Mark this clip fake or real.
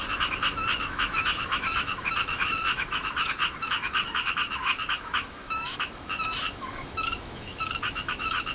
fake